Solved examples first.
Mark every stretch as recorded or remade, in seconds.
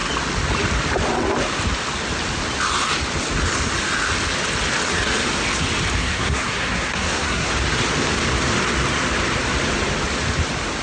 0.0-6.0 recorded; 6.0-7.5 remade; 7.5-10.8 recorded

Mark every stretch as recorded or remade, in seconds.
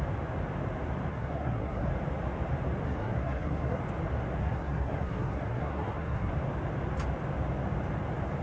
0.0-1.1 recorded; 1.1-1.9 remade; 1.9-2.8 recorded; 2.8-3.8 remade; 3.8-4.4 recorded; 4.4-6.3 remade; 6.3-8.4 recorded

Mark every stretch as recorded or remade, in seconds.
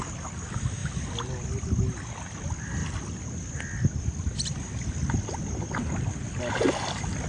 0.0-7.3 recorded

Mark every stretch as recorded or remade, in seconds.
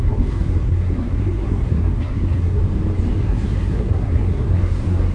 0.0-2.6 remade; 2.6-3.2 recorded; 3.2-5.1 remade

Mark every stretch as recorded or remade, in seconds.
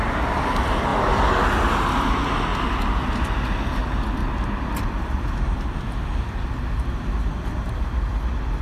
0.0-8.6 recorded